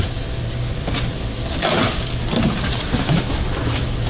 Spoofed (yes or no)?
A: no